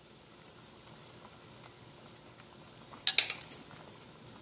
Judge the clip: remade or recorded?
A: recorded